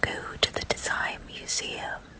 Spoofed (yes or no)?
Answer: yes